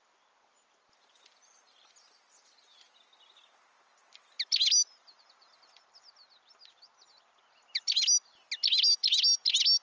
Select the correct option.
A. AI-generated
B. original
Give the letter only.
B